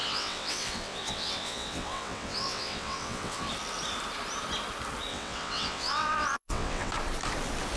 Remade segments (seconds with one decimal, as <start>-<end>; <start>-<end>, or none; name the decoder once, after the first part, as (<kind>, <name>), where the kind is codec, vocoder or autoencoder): 0.0-3.5 (vocoder, WaveNeXt); 5.1-6.9